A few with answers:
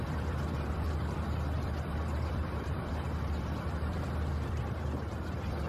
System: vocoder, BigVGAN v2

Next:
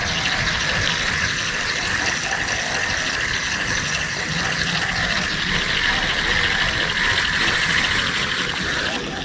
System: none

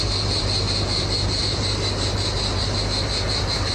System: none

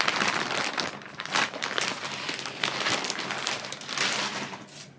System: vocoder, BigVGAN v2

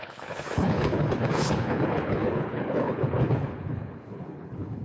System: codec, HILCodec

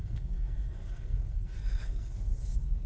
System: codec, SNAC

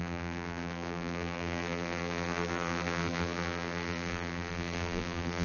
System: vocoder, BigVGAN v2